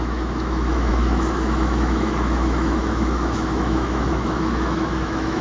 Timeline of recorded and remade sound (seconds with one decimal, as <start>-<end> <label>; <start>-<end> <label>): 0.0-5.4 remade